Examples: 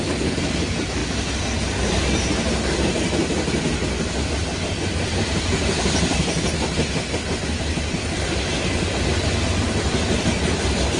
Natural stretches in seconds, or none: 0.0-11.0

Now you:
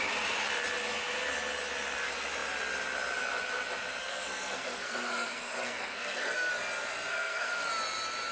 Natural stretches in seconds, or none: 0.0-4.0; 6.5-7.1; 7.7-8.3